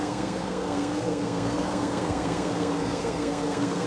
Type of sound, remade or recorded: remade